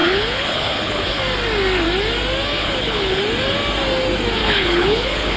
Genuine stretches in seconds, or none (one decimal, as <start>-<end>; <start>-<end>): 1.2-2.6; 3.2-4.4